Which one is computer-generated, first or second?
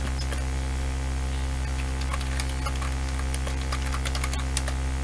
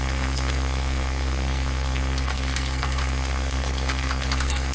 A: second